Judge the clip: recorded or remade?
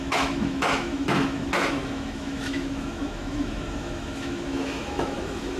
remade